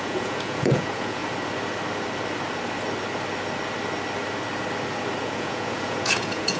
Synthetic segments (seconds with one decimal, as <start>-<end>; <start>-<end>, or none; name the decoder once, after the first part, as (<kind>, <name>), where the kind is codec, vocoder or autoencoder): 0.0-1.2 (vocoder, Vocos); 5.2-6.6